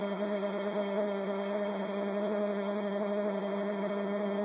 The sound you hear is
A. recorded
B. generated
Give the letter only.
B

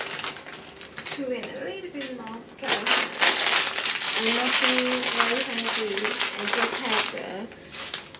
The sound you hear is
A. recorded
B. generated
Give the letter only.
A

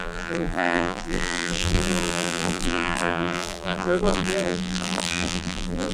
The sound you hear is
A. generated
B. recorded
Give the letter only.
A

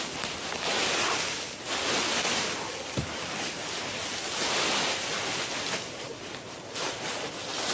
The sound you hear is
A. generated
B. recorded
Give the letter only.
B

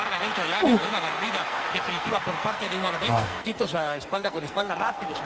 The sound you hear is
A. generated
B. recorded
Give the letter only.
A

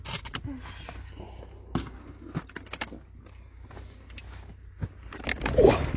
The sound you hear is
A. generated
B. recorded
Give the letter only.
B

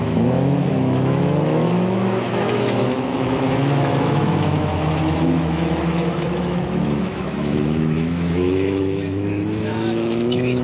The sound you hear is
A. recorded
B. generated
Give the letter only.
B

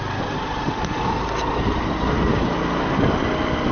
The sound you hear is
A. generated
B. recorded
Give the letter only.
B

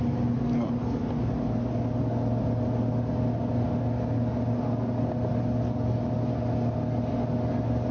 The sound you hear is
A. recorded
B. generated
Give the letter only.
A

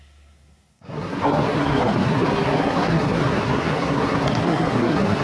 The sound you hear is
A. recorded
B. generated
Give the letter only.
B